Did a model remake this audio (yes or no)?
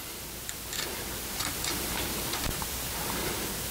yes